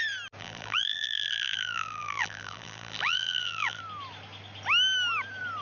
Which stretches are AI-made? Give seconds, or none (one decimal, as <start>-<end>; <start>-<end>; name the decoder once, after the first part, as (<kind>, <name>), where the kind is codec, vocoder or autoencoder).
0.4-3.8 (vocoder, BigVGAN v2)